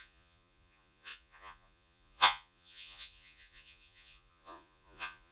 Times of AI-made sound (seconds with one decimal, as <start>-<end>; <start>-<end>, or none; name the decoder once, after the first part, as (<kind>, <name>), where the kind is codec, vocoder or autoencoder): 0.0-5.3 (vocoder, Vocos)